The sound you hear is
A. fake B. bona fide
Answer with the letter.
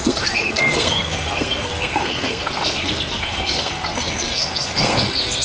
A